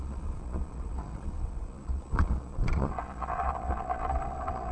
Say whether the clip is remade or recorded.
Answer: remade